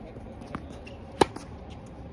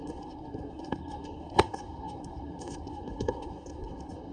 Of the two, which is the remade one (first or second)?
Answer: second